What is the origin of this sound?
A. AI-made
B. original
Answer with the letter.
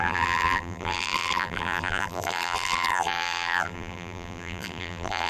A